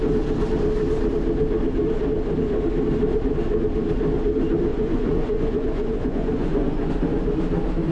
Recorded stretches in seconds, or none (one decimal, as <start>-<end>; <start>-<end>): 0.0-4.7; 6.9-7.9